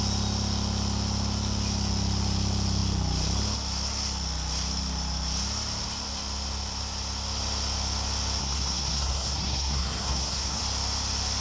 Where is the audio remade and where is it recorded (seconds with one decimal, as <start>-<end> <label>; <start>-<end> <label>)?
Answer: 0.0-8.4 recorded; 8.4-10.6 remade; 10.6-11.4 recorded